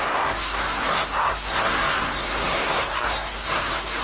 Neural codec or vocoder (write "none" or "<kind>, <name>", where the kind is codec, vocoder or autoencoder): codec, SNAC